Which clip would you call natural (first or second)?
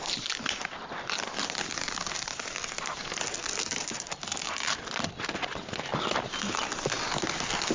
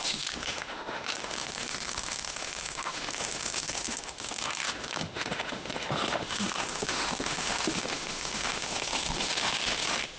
first